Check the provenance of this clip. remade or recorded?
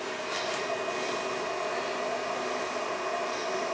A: recorded